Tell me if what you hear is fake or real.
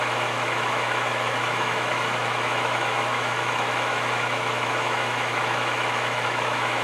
fake